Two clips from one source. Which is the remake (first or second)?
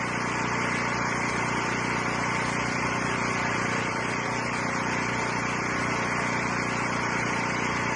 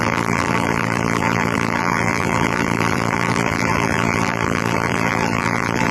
second